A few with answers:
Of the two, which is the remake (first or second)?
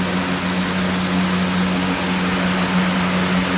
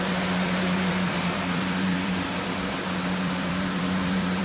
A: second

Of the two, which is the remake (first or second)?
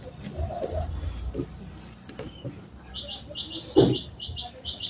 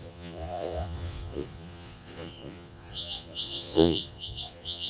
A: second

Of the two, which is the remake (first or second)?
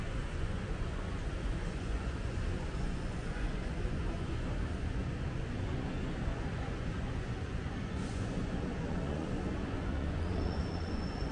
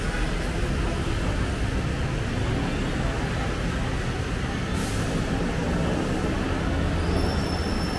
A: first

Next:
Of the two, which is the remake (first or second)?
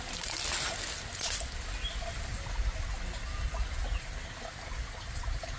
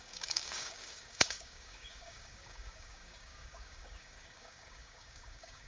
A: second